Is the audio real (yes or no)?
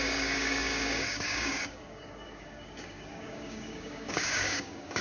no